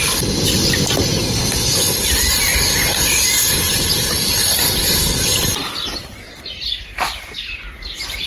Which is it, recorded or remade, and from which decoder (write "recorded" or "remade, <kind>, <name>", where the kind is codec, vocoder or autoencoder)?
recorded